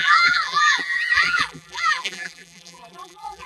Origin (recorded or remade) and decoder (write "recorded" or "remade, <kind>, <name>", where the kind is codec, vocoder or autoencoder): remade, vocoder, BigVGAN v2